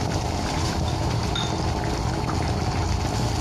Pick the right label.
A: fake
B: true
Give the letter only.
B